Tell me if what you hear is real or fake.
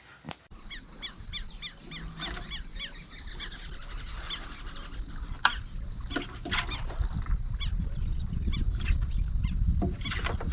real